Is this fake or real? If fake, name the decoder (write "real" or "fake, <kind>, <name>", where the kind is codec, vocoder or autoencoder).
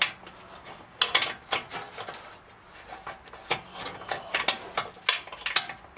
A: real